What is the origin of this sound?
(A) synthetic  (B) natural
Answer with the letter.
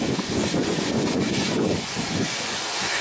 A